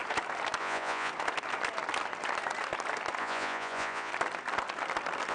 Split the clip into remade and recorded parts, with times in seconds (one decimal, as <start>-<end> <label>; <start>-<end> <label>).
0.0-0.6 recorded; 0.6-1.1 remade; 1.1-3.2 recorded; 3.2-4.1 remade; 4.1-5.3 recorded